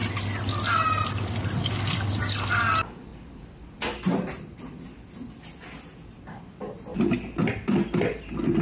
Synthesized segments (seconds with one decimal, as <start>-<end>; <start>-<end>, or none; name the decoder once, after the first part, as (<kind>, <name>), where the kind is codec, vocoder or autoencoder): none